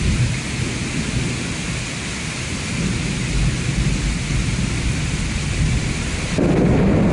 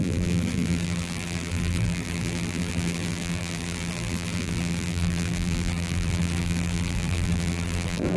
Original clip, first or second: first